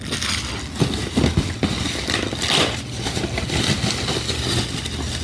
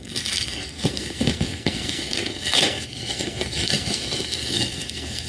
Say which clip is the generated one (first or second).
second